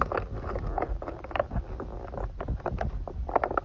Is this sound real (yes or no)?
yes